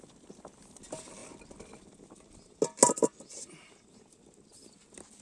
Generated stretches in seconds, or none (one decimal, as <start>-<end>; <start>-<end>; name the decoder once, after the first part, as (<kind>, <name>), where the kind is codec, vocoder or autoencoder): none